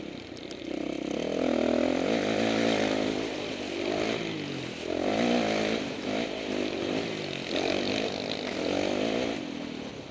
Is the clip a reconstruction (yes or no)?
no